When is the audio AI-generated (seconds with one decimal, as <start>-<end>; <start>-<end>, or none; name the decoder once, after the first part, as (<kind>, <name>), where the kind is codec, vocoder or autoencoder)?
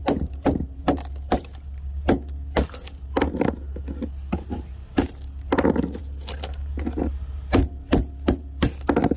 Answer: 0.0-0.8 (vocoder, BigVGAN v2)